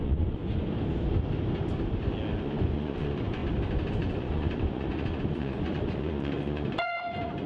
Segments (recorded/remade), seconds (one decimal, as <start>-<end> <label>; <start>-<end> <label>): 0.0-0.4 remade; 0.4-2.4 recorded; 2.4-3.4 remade; 3.4-3.9 recorded; 3.9-7.5 remade